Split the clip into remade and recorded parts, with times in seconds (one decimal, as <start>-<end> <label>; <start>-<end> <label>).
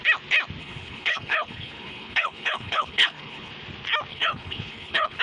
0.0-0.6 recorded; 0.6-3.5 remade; 3.5-4.1 recorded; 4.1-5.2 remade